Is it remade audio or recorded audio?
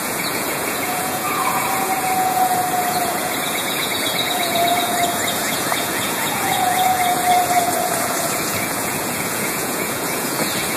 remade